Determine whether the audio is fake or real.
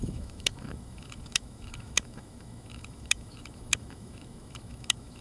fake